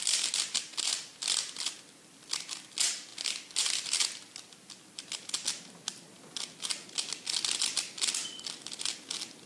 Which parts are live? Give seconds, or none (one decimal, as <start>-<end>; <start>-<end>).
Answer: 0.0-9.5